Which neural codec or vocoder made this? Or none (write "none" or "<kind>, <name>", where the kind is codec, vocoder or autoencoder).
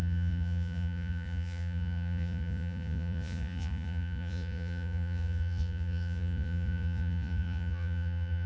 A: vocoder, Vocos